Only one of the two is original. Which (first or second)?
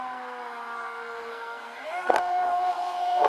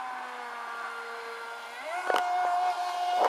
second